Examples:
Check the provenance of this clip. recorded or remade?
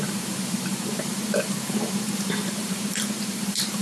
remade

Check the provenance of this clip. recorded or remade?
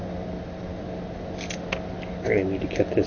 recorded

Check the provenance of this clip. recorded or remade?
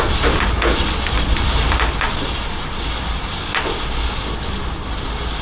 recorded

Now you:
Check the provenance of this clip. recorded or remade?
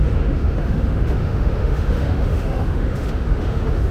remade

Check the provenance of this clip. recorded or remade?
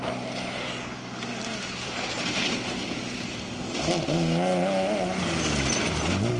recorded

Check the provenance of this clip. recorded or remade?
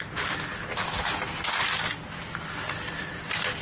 recorded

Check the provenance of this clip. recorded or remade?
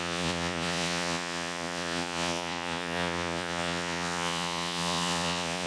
remade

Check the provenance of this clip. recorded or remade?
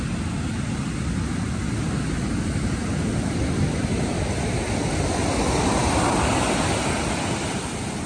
recorded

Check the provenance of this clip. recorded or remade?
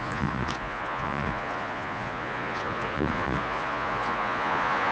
remade